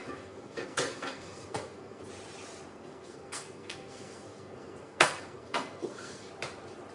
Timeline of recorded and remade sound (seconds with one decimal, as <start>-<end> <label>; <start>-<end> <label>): 0.0-2.1 remade; 2.1-2.7 recorded; 2.7-6.3 remade; 6.3-6.9 recorded